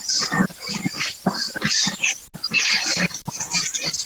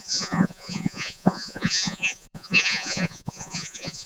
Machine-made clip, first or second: second